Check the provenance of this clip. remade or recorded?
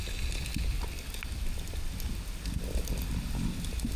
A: recorded